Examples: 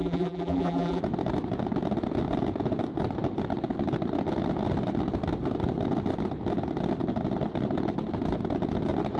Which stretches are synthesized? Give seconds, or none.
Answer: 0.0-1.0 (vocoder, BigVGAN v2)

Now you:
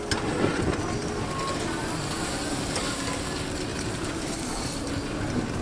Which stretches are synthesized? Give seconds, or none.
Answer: 3.7-4.3 (vocoder, BigVGAN v2)

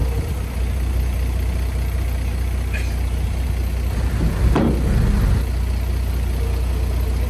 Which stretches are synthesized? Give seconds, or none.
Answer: none

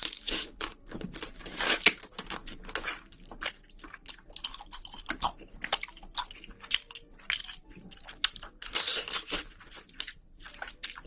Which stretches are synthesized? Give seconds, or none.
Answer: 0.0-2.4 (vocoder, BigVGAN v2); 7.7-11.1